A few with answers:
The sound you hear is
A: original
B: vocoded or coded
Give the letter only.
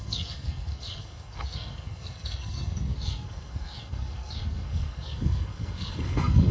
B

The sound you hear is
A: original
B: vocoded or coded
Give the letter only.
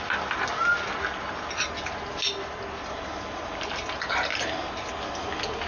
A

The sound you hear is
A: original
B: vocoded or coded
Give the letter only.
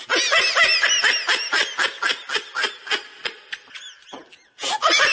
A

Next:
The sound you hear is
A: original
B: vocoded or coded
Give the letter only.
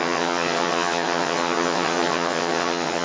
B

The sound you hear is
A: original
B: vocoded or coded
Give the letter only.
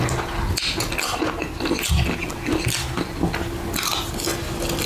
A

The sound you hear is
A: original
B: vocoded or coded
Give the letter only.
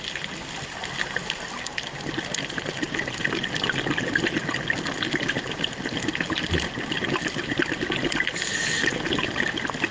A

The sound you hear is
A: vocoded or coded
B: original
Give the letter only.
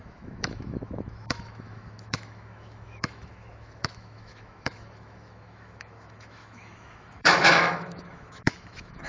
A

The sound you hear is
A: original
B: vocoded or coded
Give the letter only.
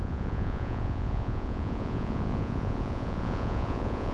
B